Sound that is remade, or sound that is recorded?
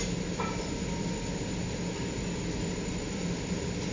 recorded